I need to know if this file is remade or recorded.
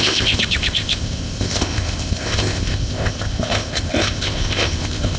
remade